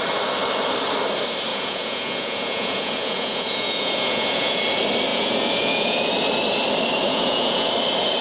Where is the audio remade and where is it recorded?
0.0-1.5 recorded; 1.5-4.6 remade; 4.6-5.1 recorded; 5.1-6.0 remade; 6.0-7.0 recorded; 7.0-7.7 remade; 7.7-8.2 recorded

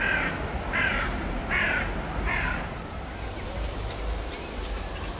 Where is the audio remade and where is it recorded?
0.0-0.9 recorded; 0.9-4.0 remade; 4.0-5.2 recorded

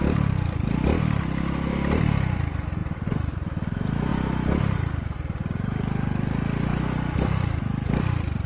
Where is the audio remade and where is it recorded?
0.0-8.5 recorded

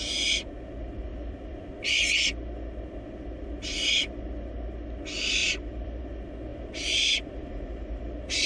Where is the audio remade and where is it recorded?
0.0-1.1 recorded; 1.1-1.7 remade; 1.7-5.4 recorded; 5.4-6.0 remade; 6.0-6.5 recorded; 6.5-7.5 remade; 7.5-8.5 recorded

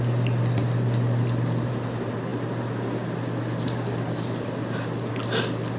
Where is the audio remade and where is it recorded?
0.0-0.6 recorded; 0.6-1.7 remade; 1.7-2.3 recorded; 2.3-5.8 remade